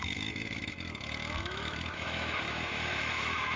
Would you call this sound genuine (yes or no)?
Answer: no